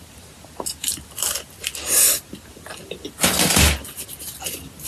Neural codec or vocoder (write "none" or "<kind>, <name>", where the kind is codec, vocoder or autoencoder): none